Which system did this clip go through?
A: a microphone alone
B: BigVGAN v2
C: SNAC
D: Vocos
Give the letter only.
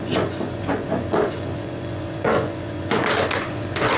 D